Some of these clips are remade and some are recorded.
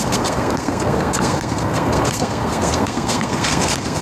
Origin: remade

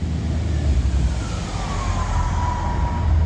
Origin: recorded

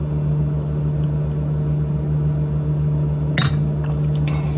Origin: recorded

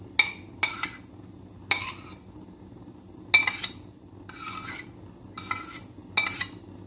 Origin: recorded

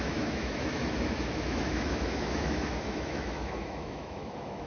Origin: remade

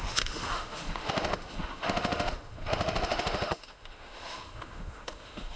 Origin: remade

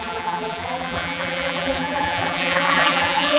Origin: remade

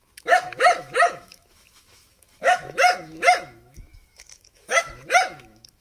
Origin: remade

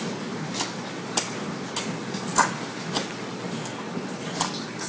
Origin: recorded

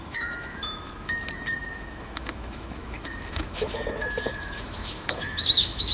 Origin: remade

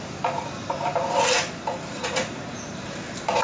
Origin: recorded